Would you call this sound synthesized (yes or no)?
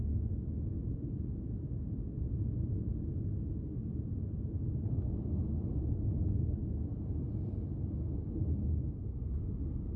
no